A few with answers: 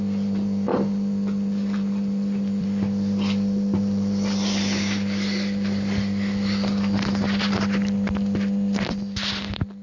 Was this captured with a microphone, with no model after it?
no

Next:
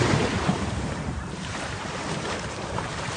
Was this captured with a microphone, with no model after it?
no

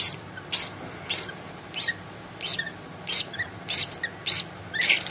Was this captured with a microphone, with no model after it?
yes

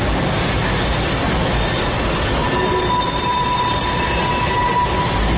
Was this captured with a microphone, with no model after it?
yes